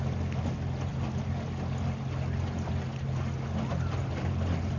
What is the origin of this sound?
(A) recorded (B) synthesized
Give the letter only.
A